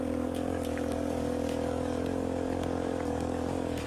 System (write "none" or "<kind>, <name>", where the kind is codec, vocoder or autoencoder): codec, DAC